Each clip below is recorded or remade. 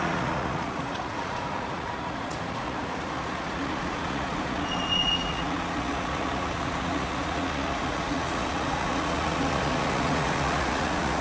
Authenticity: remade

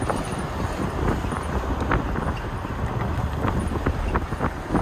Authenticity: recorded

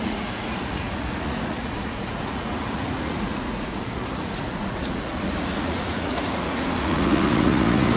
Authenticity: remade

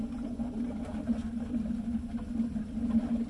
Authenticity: recorded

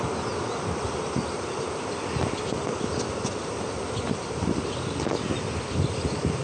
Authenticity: recorded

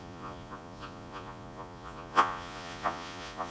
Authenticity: remade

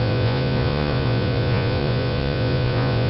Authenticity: remade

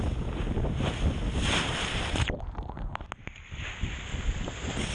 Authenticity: recorded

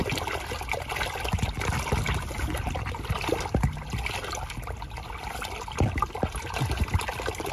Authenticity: recorded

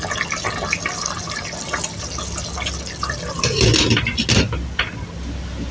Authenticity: recorded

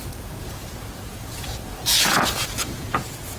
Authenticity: remade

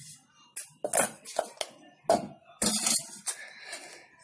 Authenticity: recorded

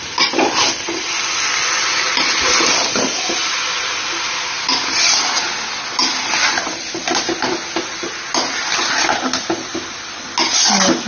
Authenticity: recorded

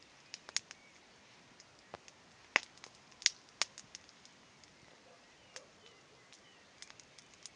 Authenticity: recorded